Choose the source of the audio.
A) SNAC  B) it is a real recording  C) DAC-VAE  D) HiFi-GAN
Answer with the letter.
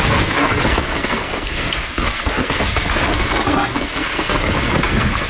A